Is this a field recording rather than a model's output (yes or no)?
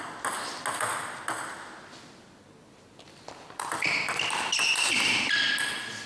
yes